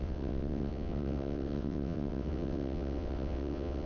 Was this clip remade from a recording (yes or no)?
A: yes